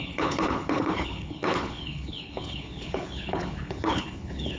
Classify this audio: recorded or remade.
remade